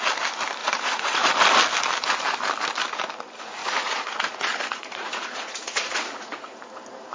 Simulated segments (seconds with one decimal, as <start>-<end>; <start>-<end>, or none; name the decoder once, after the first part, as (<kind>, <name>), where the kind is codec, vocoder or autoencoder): 0.6-1.3 (vocoder, Vocos); 3.6-6.6